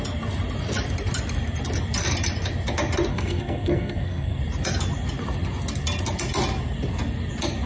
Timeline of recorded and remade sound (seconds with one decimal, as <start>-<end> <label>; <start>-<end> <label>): 0.0-3.1 recorded; 3.1-4.4 remade; 4.4-7.7 recorded